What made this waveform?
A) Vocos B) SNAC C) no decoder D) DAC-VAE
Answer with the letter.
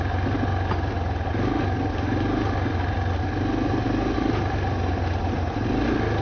C